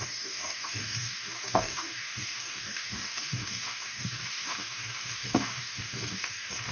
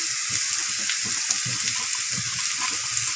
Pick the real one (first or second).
second